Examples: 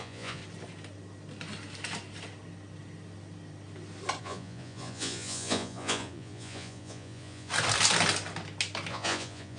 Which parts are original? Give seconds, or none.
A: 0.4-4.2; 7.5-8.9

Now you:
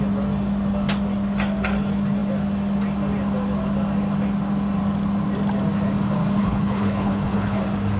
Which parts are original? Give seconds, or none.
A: 0.0-6.4; 7.6-8.0

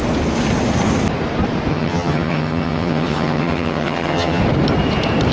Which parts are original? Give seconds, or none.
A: 0.0-1.7; 4.4-5.3

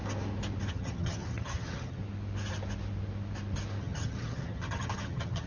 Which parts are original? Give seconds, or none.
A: 0.0-0.7; 2.0-3.8

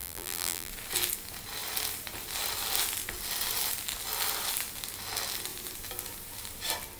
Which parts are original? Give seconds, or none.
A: 0.7-7.0

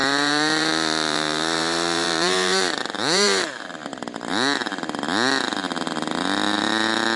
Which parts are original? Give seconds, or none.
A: 4.3-7.2